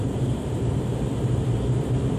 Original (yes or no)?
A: no